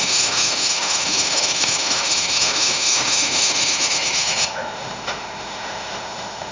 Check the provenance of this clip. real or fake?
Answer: fake